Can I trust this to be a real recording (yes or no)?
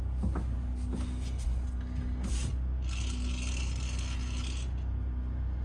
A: yes